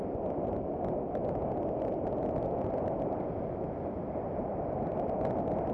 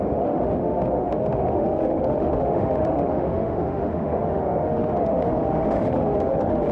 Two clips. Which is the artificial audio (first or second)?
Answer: second